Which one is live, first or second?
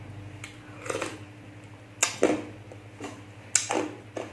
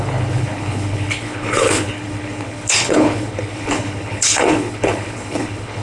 first